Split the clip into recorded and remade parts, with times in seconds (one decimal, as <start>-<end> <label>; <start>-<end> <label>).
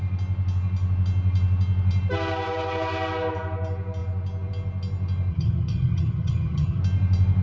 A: 0.0-5.3 recorded; 5.3-6.8 remade; 6.8-7.4 recorded